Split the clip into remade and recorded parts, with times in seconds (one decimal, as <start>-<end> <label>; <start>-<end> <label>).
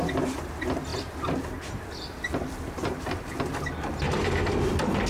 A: 0.0-5.1 recorded